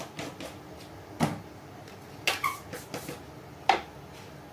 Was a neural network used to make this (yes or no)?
no